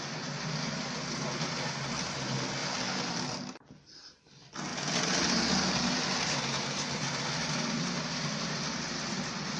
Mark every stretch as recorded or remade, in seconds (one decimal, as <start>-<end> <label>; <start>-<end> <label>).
0.0-9.6 recorded